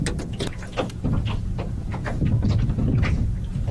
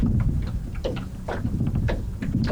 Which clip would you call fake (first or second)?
second